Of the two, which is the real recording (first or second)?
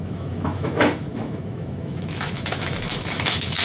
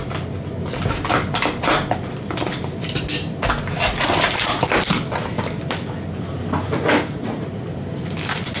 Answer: second